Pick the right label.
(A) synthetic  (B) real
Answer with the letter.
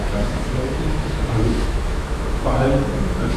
A